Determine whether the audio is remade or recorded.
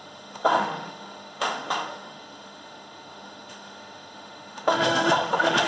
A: remade